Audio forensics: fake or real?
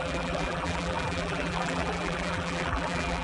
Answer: fake